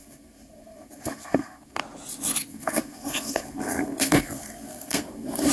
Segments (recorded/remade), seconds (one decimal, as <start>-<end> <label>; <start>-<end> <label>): 0.0-1.8 remade; 1.8-2.5 recorded; 2.5-5.5 remade